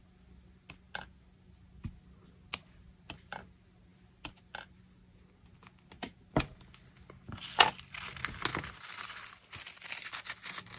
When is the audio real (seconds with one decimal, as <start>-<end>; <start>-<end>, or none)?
0.0-10.8